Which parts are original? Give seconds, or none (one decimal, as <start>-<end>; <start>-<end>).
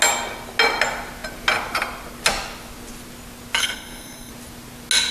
0.0-3.6; 4.3-5.1